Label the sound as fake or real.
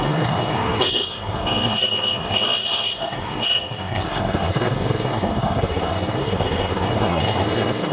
fake